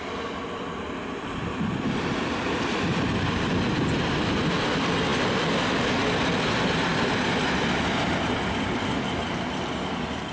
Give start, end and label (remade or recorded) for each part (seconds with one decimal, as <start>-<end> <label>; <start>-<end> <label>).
0.0-3.5 remade; 3.5-6.9 recorded; 6.9-8.2 remade; 8.2-10.3 recorded

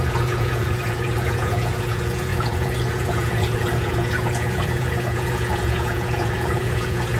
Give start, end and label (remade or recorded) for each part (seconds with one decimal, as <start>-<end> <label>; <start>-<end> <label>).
0.0-7.2 remade

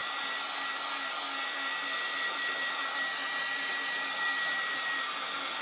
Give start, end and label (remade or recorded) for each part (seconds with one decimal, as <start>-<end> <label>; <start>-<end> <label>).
0.0-5.6 recorded

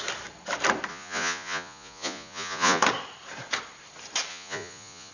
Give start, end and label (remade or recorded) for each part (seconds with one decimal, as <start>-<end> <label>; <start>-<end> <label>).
0.0-0.9 recorded; 0.9-2.8 remade; 2.8-4.3 recorded; 4.3-5.1 remade

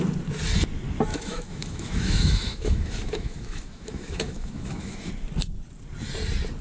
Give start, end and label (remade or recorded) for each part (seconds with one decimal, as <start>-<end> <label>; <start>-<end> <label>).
0.0-1.1 recorded; 1.1-5.1 remade; 5.1-6.6 recorded